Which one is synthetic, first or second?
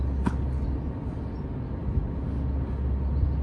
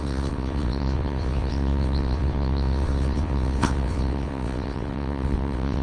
second